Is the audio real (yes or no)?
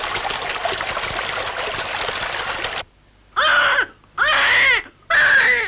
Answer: yes